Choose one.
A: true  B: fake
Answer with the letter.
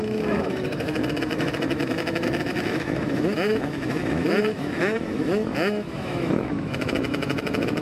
B